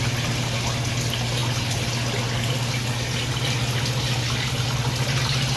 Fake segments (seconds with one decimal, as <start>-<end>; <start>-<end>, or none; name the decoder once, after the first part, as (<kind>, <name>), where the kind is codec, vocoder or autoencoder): none